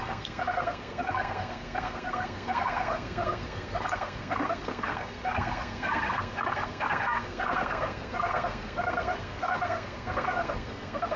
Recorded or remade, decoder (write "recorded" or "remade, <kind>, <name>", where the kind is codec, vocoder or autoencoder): remade, codec, SNAC